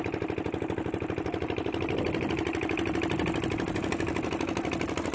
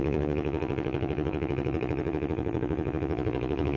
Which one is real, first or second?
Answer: first